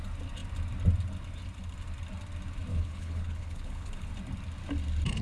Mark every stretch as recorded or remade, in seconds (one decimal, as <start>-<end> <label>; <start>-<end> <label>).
0.0-2.7 recorded; 2.7-4.1 remade; 4.1-5.2 recorded